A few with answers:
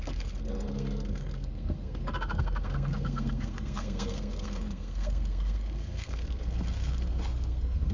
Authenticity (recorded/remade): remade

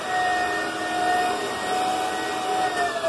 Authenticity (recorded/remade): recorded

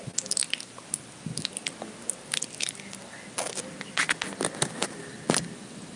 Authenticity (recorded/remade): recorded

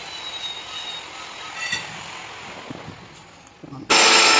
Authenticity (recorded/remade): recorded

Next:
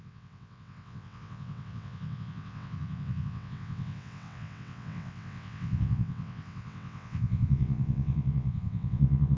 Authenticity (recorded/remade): remade